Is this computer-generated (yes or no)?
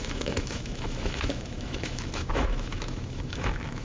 yes